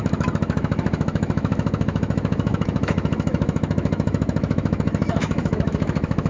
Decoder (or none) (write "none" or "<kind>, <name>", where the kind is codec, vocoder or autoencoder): autoencoder, DAC-VAE